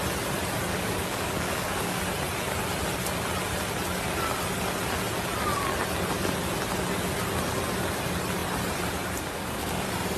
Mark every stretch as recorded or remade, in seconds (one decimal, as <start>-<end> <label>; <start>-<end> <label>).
0.0-0.7 recorded; 0.7-2.0 remade; 2.0-10.2 recorded